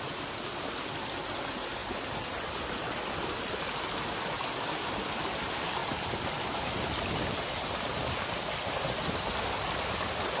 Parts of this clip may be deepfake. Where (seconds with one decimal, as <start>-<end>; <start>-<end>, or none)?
none